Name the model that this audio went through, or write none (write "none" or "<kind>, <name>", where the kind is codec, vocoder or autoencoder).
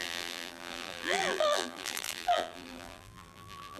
vocoder, BigVGAN v2